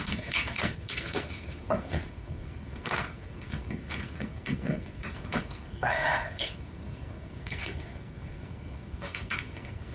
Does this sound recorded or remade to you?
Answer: remade